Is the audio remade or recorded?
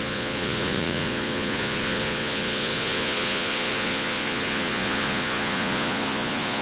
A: remade